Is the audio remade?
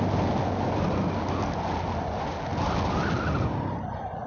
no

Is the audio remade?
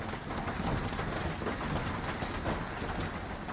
no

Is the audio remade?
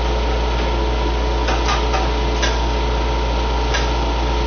no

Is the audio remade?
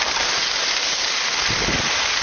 no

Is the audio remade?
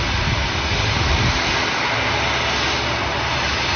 no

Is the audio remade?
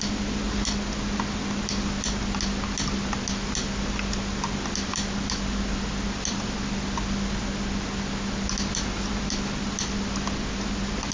no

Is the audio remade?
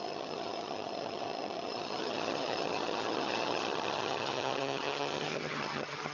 yes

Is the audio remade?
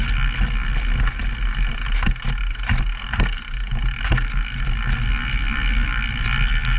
no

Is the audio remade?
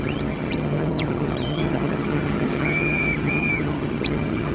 yes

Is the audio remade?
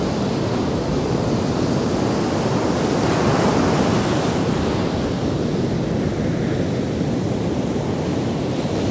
no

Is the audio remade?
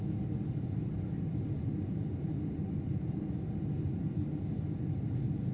no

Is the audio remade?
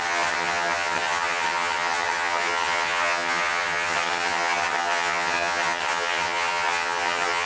yes